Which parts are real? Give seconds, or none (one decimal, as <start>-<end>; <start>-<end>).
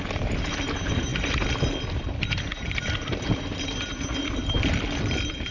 0.0-5.5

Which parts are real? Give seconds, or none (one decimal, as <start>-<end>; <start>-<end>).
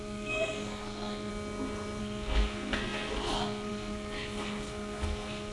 1.3-2.0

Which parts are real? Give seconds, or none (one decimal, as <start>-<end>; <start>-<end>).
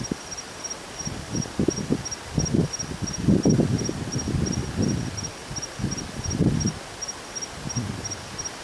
0.0-8.6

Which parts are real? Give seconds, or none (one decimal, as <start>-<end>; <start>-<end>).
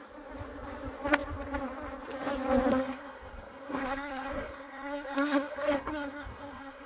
0.0-2.7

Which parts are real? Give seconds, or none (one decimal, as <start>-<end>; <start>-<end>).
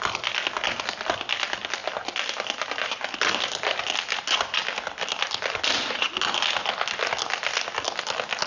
0.0-8.5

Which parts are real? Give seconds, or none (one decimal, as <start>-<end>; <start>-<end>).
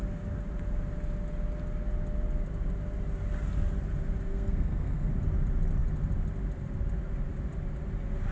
0.0-4.3; 5.1-8.3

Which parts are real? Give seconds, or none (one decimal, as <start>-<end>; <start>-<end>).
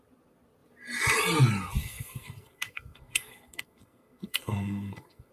0.0-1.8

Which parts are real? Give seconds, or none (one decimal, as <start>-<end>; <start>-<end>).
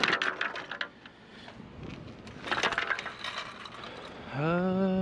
0.0-5.0